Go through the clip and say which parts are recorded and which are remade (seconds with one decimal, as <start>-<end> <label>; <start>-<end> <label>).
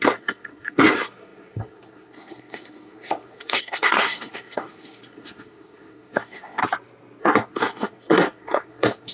0.0-6.6 remade; 6.6-7.2 recorded; 7.2-9.1 remade